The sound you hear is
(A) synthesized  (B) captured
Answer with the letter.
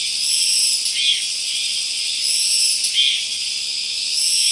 B